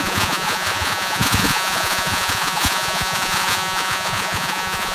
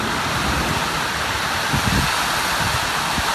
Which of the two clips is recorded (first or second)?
second